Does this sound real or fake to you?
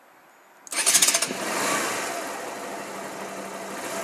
real